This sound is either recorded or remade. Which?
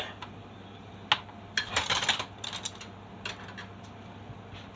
recorded